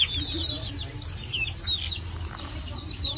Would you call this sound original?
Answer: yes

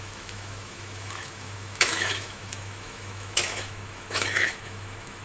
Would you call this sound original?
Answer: no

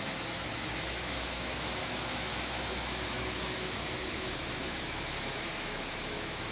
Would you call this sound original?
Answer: no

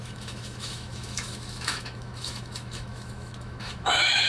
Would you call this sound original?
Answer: no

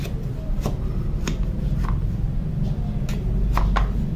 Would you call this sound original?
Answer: yes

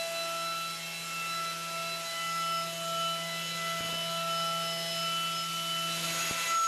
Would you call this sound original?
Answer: yes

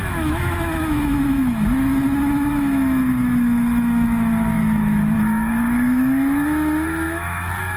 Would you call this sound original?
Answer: no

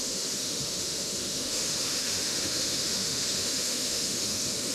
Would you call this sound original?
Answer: no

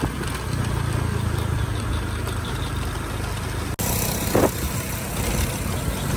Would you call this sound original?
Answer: yes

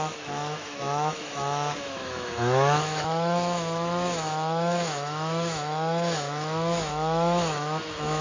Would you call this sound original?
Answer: no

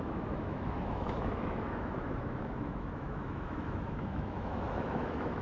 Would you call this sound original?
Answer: no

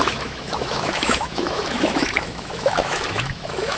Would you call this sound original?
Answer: no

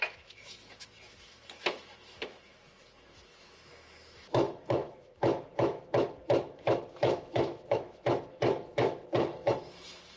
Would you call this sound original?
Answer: no